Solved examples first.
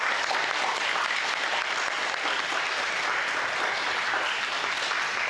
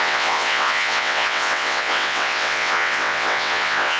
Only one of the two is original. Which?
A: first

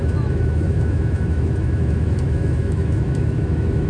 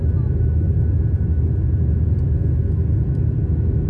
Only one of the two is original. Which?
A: second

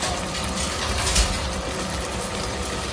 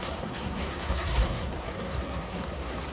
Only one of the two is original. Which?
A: first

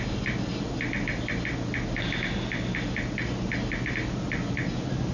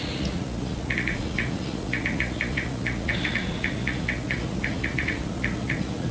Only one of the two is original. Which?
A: first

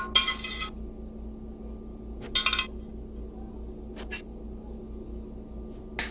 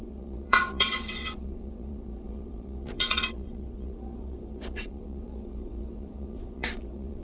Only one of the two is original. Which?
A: first